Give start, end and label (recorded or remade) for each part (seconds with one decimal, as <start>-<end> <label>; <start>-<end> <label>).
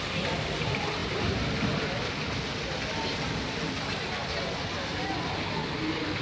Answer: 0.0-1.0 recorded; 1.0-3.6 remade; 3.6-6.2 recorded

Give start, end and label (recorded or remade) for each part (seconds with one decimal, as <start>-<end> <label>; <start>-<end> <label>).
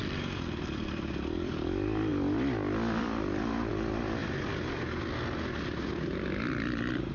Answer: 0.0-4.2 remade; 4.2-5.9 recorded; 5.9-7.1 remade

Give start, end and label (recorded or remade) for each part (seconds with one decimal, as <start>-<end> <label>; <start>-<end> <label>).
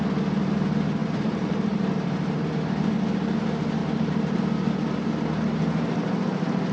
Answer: 0.0-1.0 recorded; 1.0-2.5 remade; 2.5-3.8 recorded; 3.8-4.4 remade; 4.4-6.7 recorded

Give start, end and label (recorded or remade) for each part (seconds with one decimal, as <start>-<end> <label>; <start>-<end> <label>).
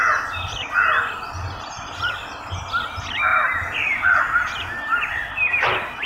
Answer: 0.0-3.3 recorded; 3.3-4.2 remade; 4.2-6.1 recorded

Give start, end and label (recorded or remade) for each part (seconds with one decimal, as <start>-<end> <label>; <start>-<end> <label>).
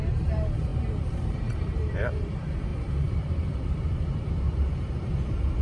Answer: 0.0-5.6 remade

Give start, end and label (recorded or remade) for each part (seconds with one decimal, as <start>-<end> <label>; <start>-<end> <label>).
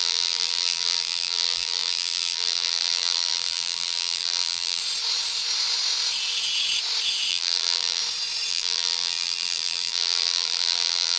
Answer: 0.0-4.8 remade; 4.8-7.3 recorded; 7.3-8.0 remade; 8.0-8.5 recorded; 8.5-11.2 remade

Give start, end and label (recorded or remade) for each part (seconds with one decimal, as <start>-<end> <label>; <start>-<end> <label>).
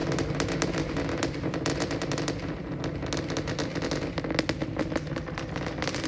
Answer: 0.0-1.1 recorded; 1.1-2.8 remade; 2.8-4.8 recorded; 4.8-6.1 remade